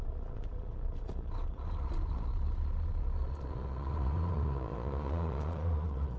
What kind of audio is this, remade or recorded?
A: remade